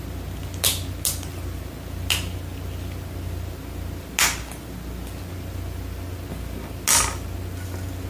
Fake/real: real